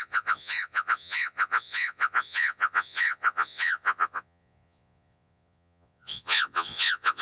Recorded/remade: remade